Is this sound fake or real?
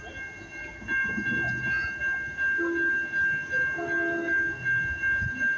real